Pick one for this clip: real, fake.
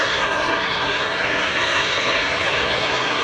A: fake